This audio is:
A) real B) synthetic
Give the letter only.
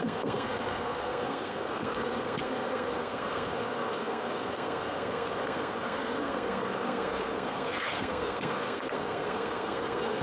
B